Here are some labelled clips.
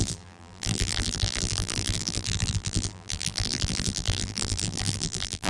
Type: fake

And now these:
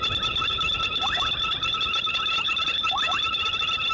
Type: real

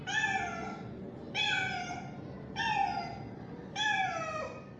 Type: real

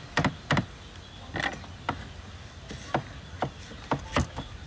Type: real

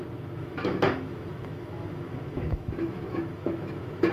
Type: fake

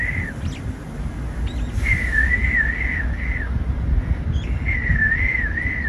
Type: real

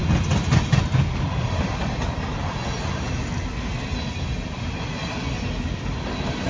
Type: real